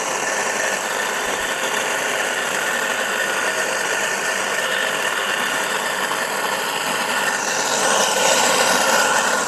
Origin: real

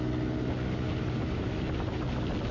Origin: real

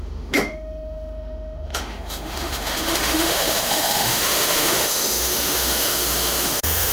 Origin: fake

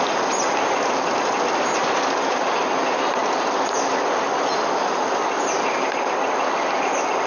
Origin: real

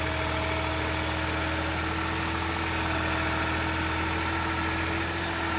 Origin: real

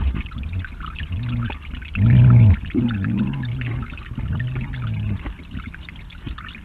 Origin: real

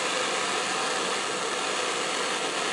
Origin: real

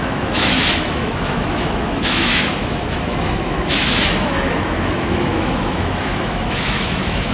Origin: fake